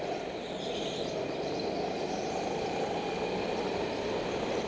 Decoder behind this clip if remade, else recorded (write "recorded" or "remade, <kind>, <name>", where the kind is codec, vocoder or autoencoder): recorded